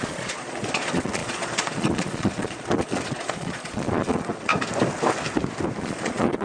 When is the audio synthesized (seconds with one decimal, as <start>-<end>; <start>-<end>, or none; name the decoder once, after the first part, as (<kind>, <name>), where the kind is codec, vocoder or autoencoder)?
0.0-4.5 (vocoder, Vocos); 5.8-6.4